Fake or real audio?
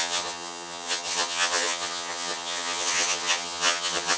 fake